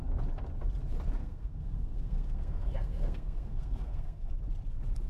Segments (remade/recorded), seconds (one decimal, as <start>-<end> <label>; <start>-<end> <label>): 0.0-1.2 recorded; 1.2-4.3 remade; 4.3-5.1 recorded

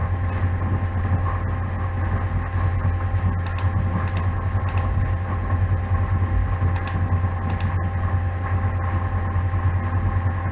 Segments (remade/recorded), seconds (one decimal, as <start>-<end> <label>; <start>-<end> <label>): 0.0-10.5 recorded